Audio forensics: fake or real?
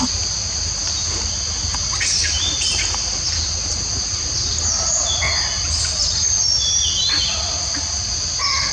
real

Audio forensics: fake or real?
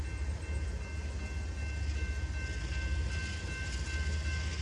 real